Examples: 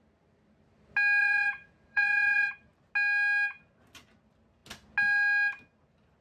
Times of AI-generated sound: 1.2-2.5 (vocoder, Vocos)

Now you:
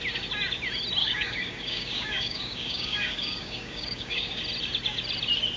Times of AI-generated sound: 1.0-4.4 (codec, DAC)

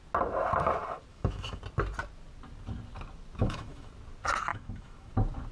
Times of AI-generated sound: 1.1-1.6 (autoencoder, DAC-VAE); 3.4-3.9; 4.5-5.1

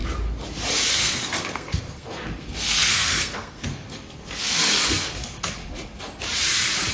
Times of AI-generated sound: 0.9-5.6 (codec, SNAC)

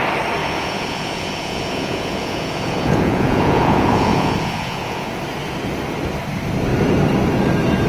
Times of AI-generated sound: 0.4-5.1 (vocoder, Vocos)

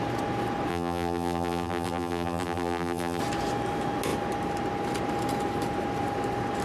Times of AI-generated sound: 0.7-3.2 (vocoder, BigVGAN v2)